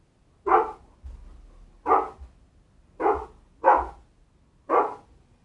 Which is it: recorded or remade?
recorded